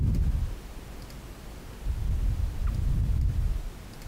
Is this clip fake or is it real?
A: real